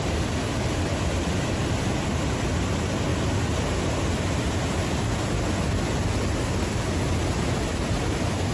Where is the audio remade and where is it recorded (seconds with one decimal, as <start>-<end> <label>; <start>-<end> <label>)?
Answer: 0.0-8.5 recorded